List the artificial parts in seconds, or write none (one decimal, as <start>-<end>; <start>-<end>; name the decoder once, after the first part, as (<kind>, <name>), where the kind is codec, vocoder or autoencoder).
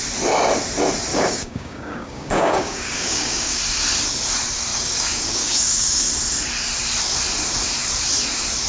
1.1-3.6 (codec, DAC); 4.7-6.1